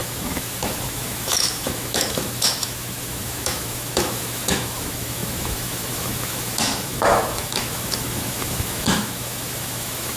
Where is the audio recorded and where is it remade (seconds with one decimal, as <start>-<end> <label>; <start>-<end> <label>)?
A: 0.0-10.2 remade